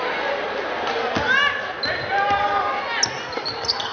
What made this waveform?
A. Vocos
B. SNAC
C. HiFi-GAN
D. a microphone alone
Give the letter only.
D